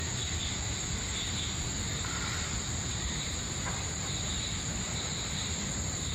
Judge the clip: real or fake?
fake